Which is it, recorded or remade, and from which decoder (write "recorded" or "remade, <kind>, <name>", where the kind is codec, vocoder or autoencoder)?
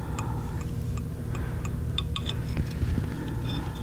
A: recorded